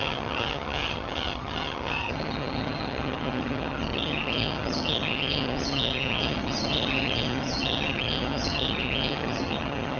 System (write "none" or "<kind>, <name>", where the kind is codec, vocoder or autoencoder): vocoder, HiFi-GAN